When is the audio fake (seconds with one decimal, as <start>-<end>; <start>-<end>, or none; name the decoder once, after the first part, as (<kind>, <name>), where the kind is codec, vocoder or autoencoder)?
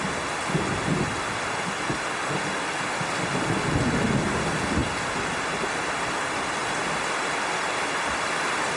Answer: none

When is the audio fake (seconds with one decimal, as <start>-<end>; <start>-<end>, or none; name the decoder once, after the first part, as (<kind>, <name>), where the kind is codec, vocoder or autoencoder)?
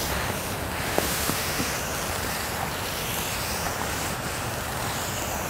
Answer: 0.9-1.7 (autoencoder, DAC-VAE)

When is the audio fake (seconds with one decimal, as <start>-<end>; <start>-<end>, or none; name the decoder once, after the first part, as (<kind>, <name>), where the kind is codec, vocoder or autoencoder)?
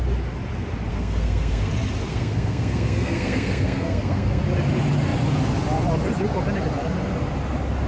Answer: 0.9-1.7 (codec, SNAC); 2.1-4.4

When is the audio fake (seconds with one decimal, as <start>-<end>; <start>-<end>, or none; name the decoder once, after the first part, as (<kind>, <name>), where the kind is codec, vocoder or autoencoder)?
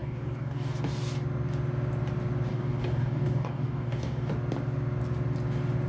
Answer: 0.0-0.8 (codec, DAC); 2.5-4.3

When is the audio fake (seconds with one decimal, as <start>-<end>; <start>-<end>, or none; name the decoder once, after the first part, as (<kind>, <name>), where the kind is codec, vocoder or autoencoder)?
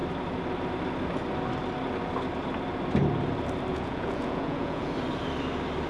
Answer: 3.7-4.9 (vocoder, Vocos)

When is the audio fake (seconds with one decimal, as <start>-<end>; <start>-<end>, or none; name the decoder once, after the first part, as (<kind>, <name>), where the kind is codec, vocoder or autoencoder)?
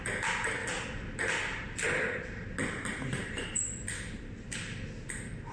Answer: none